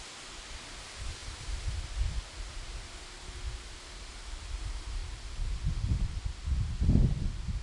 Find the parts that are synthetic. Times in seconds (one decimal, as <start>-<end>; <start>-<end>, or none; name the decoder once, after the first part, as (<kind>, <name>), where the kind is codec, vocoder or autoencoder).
none